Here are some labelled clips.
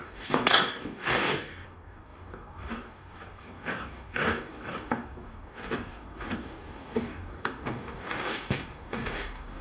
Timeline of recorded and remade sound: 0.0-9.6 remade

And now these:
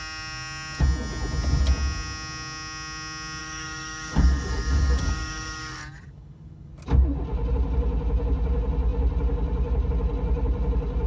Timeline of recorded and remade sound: 0.0-3.4 recorded; 3.4-6.7 remade; 6.7-11.1 recorded